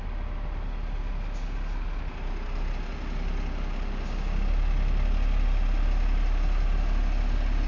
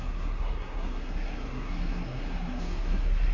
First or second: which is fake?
second